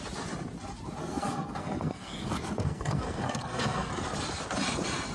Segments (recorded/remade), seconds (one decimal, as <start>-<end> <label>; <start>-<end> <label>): 0.0-1.0 recorded; 1.0-3.9 remade; 3.9-5.1 recorded